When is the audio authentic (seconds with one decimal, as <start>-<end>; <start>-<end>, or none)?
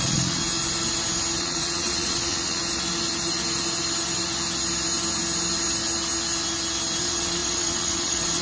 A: 0.4-1.4; 2.6-7.0